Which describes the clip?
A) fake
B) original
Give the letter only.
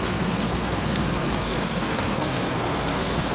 A